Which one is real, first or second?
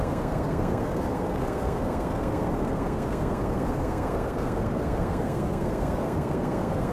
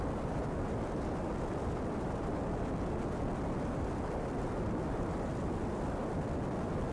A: second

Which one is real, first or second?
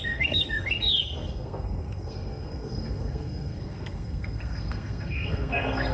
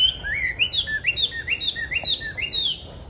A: second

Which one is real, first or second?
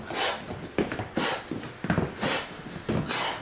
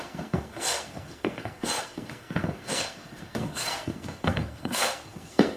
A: first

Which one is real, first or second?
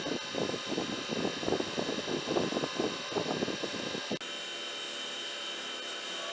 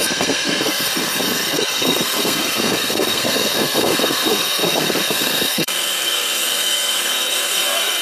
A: first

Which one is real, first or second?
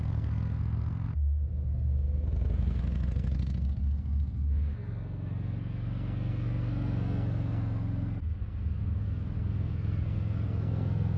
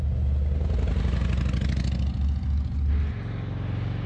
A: second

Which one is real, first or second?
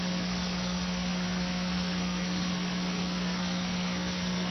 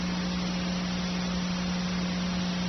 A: second